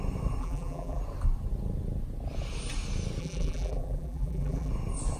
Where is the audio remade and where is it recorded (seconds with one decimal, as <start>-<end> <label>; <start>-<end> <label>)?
0.0-0.4 recorded; 0.4-1.0 remade; 1.0-3.2 recorded; 3.2-4.7 remade; 4.7-5.2 recorded